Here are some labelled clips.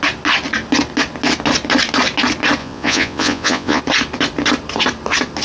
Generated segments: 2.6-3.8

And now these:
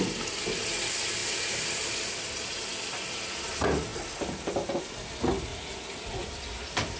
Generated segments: 5.5-6.3